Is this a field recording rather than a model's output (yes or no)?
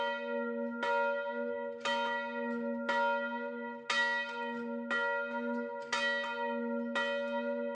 yes